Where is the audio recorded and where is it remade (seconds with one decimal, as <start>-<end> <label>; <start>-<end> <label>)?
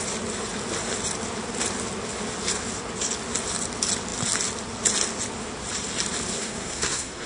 0.0-6.3 recorded; 6.3-7.3 remade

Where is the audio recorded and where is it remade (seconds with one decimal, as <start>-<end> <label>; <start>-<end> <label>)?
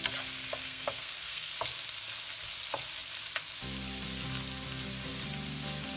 0.0-0.6 recorded; 0.6-1.5 remade; 1.5-6.0 recorded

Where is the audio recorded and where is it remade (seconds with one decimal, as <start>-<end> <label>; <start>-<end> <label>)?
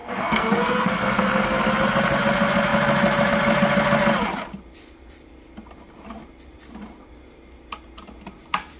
0.0-1.7 remade; 1.7-8.8 recorded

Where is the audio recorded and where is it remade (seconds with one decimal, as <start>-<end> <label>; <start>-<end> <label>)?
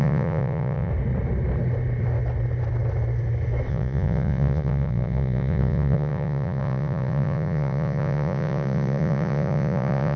0.0-0.9 remade; 0.9-3.7 recorded; 3.7-10.2 remade